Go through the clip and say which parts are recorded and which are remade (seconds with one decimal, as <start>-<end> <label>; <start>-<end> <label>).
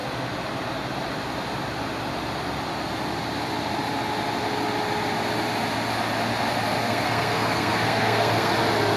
0.0-6.8 recorded; 6.8-8.5 remade; 8.5-9.0 recorded